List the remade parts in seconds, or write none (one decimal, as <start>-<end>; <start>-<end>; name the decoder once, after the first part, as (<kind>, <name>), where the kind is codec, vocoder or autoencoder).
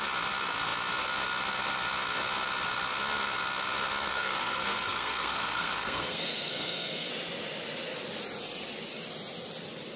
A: 4.1-7.1 (codec, SNAC)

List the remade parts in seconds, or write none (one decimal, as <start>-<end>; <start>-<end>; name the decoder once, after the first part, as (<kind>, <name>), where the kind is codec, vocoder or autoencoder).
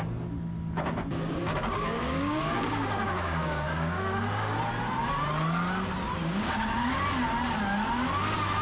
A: 1.4-4.6 (codec, DAC); 6.2-6.9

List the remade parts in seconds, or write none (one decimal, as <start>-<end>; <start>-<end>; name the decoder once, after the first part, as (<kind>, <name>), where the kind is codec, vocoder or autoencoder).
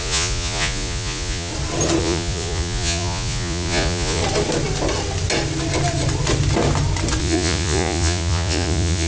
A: 0.0-1.5 (vocoder, Vocos); 2.0-4.2; 7.2-9.1